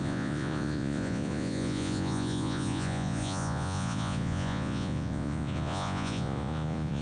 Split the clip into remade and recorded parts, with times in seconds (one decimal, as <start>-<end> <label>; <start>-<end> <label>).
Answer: 0.0-7.0 remade